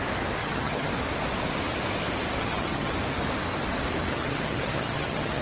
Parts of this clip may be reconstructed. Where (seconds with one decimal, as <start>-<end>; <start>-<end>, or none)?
0.4-0.9; 2.4-2.9; 4.1-5.4

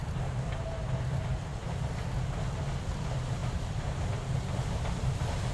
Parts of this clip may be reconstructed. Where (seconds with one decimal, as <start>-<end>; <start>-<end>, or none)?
none

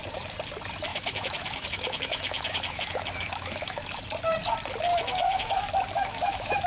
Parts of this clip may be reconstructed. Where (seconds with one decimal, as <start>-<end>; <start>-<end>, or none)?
0.9-4.0; 4.9-6.7

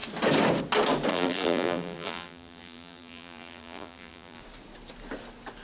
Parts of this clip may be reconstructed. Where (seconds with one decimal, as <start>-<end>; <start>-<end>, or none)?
1.1-4.4